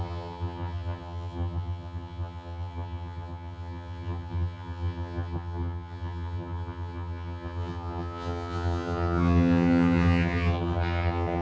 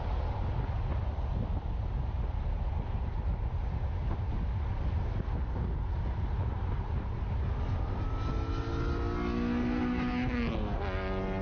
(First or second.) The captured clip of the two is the second